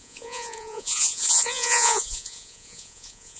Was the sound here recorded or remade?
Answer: remade